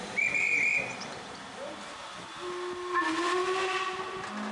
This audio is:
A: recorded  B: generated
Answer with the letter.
A